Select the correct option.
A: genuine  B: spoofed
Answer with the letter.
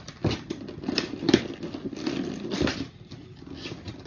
A